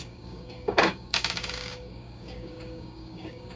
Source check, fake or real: fake